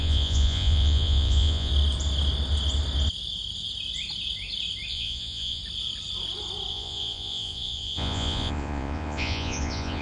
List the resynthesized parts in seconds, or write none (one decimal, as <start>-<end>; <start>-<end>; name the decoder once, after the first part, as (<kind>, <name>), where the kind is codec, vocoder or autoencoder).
0.0-1.7 (vocoder, Vocos); 4.9-5.6; 6.7-10.0